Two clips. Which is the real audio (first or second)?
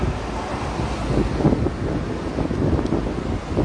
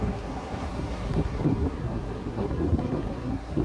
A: first